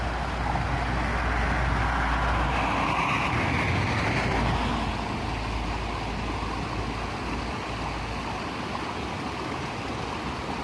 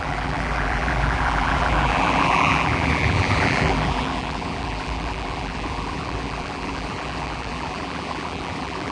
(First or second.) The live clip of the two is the first